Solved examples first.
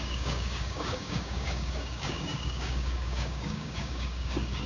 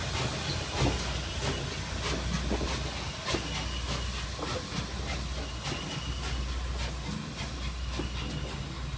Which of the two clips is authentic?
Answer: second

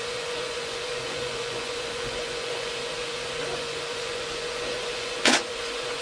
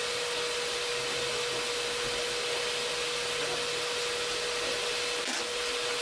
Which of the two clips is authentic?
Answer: second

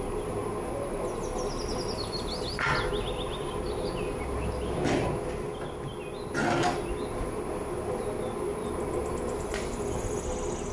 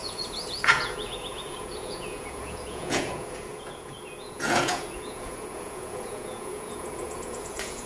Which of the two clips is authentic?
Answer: first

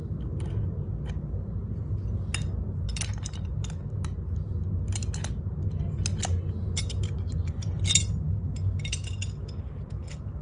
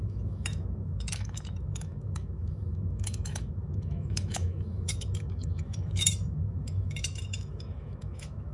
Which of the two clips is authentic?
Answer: first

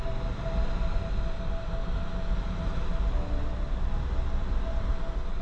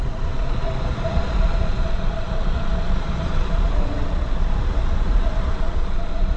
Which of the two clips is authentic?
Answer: first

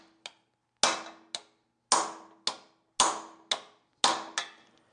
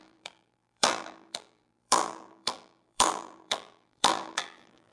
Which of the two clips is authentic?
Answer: first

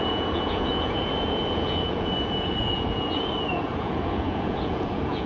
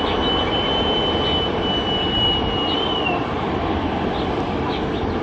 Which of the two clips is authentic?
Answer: second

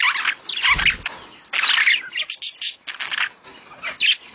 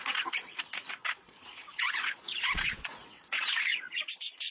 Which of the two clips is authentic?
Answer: first